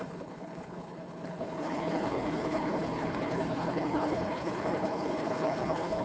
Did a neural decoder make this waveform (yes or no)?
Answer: yes